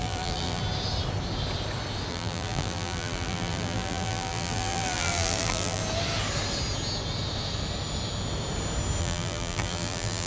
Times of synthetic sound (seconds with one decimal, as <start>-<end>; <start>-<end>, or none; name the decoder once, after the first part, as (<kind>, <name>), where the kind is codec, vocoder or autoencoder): 0.0-0.6 (vocoder, BigVGAN v2); 2.1-5.8; 9.0-10.3